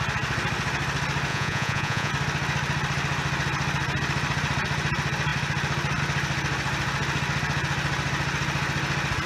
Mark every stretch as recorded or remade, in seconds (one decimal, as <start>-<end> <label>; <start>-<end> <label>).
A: 0.0-1.3 recorded; 1.3-2.1 remade; 2.1-9.3 recorded